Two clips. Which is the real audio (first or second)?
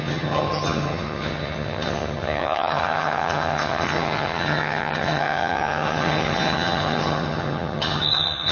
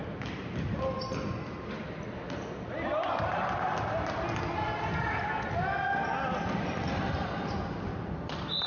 second